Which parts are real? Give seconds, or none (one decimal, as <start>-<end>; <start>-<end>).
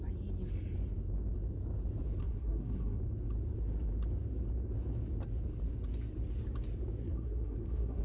0.0-2.2; 3.0-7.0